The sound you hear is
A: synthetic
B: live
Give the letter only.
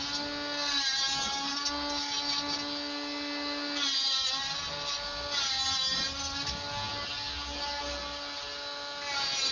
B